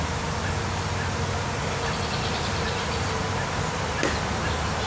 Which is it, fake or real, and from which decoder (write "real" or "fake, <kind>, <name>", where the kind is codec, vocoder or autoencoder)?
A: real